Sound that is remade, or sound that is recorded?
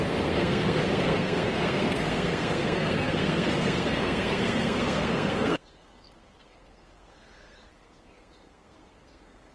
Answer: remade